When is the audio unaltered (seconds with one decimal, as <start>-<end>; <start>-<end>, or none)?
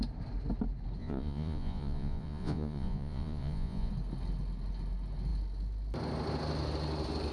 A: 0.0-1.0; 3.9-7.3